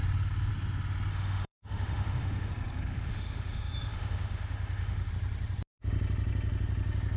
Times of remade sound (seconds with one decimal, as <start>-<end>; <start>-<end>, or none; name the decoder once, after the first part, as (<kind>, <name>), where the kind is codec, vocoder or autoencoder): 1.1-2.5 (autoencoder, DAC-VAE); 2.9-5.1